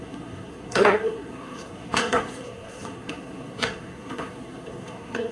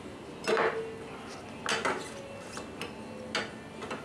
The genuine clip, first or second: second